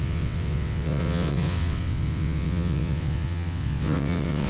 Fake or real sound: fake